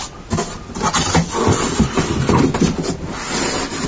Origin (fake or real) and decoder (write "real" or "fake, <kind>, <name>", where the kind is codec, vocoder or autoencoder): real